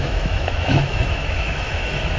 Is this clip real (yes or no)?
no